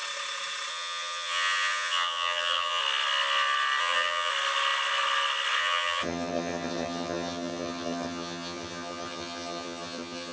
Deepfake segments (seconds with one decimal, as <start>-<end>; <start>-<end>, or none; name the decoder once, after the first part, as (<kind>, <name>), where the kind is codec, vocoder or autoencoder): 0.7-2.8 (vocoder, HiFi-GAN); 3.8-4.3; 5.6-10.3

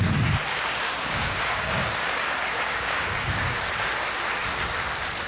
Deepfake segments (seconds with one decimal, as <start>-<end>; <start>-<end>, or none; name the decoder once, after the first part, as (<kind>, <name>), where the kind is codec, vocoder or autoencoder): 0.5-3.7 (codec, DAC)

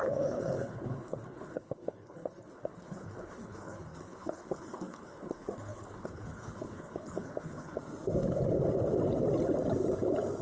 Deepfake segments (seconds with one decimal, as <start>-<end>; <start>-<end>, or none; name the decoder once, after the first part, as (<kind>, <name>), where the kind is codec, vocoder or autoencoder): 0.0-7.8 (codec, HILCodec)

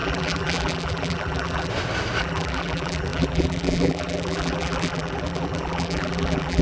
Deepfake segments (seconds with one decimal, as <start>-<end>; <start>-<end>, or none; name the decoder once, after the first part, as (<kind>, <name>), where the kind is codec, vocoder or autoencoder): 0.0-1.7 (vocoder, BigVGAN v2); 2.2-6.6

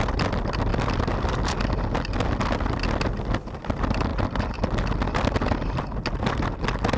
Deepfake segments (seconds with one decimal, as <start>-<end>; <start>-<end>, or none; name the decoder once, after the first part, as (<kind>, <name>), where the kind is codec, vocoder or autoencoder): none